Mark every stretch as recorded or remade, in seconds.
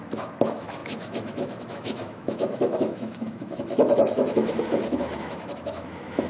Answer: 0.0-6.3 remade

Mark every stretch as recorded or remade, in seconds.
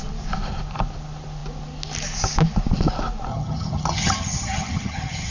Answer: 0.0-3.3 recorded; 3.3-5.3 remade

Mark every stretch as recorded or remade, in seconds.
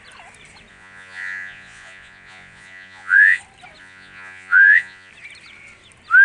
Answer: 0.0-0.7 recorded; 0.7-3.4 remade; 3.4-3.8 recorded; 3.8-5.1 remade; 5.1-6.2 recorded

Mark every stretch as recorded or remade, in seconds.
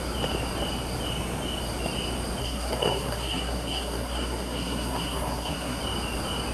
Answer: 0.0-2.4 recorded; 2.4-5.8 remade; 5.8-6.5 recorded